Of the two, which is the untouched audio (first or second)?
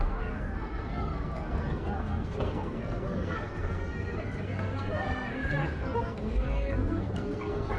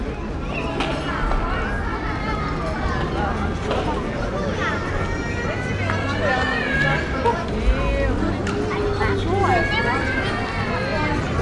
second